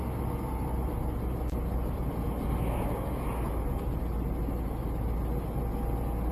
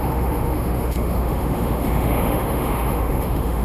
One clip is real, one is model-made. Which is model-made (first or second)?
second